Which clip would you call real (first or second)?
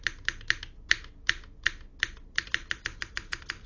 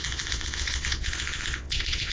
first